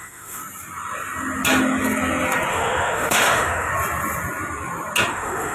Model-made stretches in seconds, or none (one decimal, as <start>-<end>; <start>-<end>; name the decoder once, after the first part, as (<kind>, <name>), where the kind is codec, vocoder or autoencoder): 0.0-0.4 (autoencoder, DAC-VAE); 2.5-3.7; 5.1-5.5